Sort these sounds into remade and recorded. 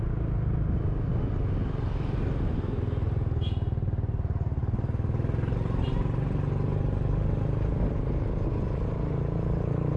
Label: recorded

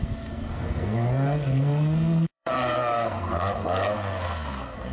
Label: remade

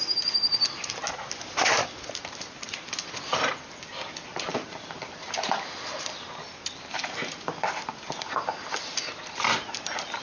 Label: recorded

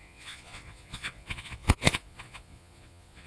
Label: remade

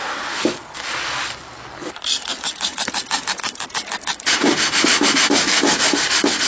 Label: recorded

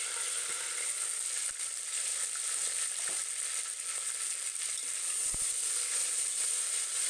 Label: recorded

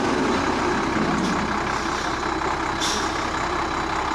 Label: recorded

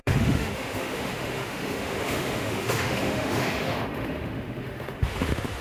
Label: remade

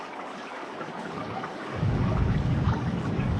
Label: remade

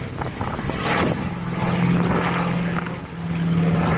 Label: recorded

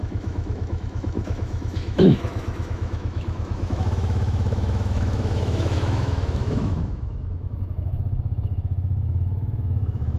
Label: remade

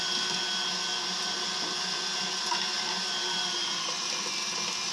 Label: recorded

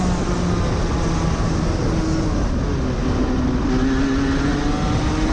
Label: recorded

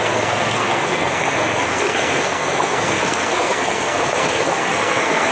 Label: remade